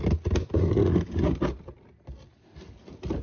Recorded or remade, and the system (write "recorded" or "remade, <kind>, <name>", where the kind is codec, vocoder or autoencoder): recorded